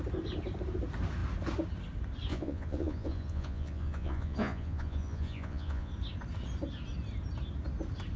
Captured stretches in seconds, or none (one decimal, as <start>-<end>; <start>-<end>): 0.0-2.3; 5.9-8.2